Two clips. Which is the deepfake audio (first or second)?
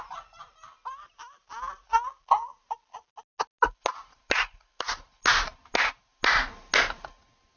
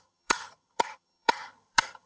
second